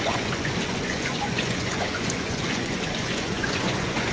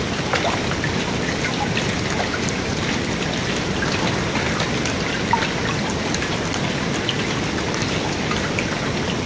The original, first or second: second